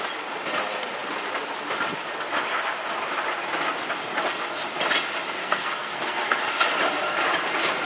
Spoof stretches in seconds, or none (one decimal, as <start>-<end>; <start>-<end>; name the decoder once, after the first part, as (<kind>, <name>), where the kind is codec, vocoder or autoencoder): 5.4-6.4 (codec, SNAC)